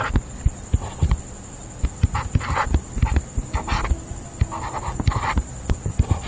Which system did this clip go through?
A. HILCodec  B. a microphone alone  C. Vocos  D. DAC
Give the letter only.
B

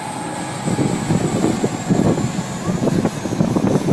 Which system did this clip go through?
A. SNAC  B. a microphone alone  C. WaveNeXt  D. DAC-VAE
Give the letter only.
B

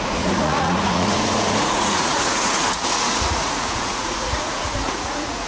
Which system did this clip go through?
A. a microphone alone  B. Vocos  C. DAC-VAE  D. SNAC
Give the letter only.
B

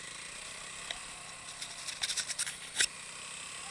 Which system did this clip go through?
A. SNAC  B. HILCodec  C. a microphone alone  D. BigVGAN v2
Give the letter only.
C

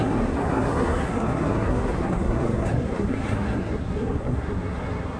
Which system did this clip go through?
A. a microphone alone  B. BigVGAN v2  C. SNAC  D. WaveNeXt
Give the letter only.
C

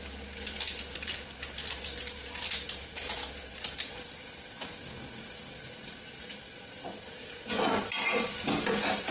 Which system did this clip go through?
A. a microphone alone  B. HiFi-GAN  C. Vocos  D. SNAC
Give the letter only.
A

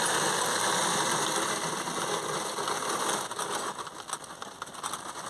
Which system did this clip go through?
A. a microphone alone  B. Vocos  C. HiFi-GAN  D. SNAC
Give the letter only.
A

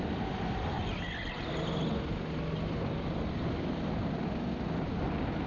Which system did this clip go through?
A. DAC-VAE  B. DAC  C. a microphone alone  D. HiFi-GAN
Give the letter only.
C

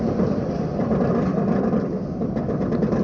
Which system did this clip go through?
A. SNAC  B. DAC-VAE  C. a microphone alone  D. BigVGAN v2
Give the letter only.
D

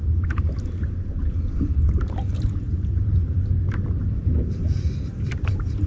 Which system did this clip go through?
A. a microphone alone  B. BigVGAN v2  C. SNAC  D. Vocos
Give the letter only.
B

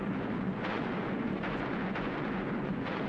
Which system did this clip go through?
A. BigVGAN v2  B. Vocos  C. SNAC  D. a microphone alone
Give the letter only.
B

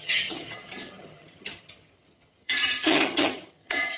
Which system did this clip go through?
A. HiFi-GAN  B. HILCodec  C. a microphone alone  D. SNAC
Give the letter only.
A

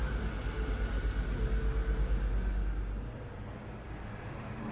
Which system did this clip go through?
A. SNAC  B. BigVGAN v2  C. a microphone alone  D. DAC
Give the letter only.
C